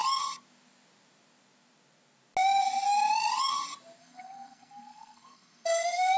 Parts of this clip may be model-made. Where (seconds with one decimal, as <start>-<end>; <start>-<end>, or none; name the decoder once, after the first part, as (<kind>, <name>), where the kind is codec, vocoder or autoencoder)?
4.0-6.2 (codec, SNAC)